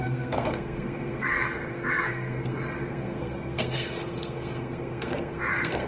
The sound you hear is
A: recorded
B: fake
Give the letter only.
B